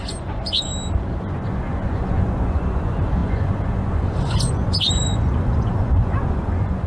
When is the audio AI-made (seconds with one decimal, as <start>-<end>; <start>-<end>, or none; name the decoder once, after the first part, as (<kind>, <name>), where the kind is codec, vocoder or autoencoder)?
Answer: 0.0-0.7 (vocoder, Vocos); 1.2-6.9